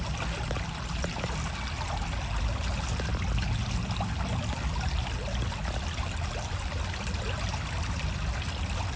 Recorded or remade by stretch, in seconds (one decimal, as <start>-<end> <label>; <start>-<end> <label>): 0.0-9.0 recorded